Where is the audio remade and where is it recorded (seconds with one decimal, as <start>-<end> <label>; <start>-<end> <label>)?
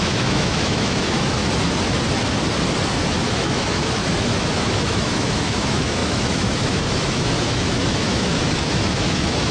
0.0-1.4 remade; 1.4-3.3 recorded; 3.3-9.5 remade